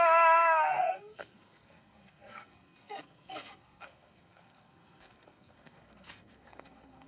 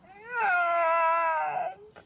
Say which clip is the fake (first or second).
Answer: first